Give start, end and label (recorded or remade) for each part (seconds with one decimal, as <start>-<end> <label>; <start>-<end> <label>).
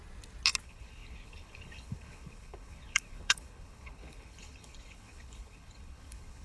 0.0-0.6 recorded; 0.6-6.4 remade